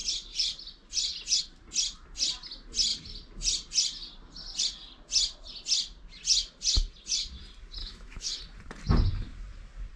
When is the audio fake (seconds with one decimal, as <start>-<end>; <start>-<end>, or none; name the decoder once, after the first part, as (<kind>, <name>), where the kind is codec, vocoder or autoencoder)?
7.8-8.4 (autoencoder, DAC-VAE)